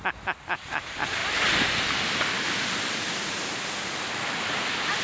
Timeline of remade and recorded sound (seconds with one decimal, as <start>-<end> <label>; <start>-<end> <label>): 0.0-5.0 recorded